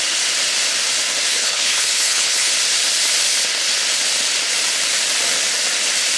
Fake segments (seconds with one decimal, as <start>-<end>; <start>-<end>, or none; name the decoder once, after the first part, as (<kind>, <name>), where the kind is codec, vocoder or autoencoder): 1.3-2.5 (codec, HILCodec)